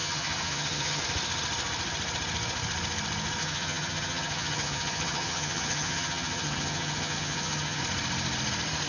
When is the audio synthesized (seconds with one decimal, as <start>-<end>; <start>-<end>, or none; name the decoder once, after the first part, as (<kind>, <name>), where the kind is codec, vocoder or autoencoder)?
0.0-1.0 (vocoder, HiFi-GAN); 3.4-7.8

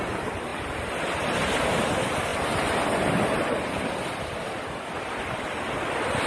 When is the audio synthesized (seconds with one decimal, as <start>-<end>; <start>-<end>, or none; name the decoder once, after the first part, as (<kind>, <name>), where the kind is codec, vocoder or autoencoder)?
none

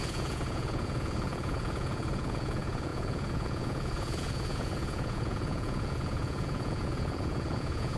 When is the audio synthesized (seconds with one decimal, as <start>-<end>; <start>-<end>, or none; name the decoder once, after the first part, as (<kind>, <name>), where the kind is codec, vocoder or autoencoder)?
0.0-8.0 (vocoder, Vocos)

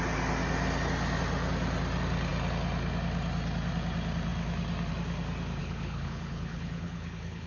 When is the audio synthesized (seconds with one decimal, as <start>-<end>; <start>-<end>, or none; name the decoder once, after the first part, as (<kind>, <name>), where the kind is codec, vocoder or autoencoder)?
5.6-7.5 (codec, HILCodec)

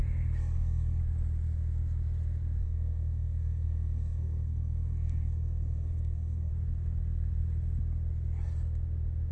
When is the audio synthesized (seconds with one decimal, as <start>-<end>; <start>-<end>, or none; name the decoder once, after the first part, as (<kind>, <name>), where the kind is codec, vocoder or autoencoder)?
0.4-1.0 (codec, SNAC); 2.6-6.5